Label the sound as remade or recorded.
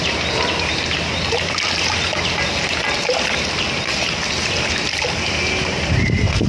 recorded